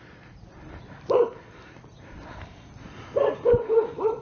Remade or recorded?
remade